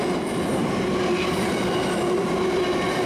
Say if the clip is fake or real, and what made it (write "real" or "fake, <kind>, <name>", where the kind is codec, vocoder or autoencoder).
real